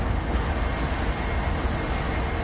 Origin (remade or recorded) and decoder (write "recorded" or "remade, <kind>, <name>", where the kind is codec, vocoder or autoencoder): recorded